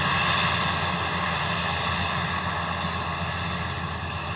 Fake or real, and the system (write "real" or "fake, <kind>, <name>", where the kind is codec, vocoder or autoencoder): real